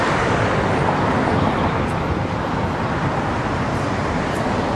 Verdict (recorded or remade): remade